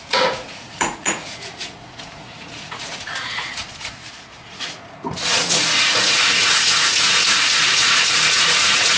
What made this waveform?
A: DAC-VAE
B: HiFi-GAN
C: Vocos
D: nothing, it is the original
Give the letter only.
C